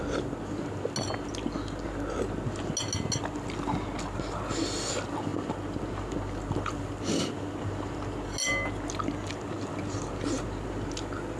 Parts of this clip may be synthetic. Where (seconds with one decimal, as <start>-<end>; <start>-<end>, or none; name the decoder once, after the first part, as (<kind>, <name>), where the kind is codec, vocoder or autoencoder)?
none